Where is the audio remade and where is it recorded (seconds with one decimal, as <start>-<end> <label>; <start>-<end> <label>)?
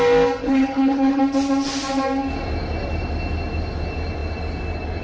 0.0-0.4 recorded; 0.4-1.2 remade; 1.2-5.0 recorded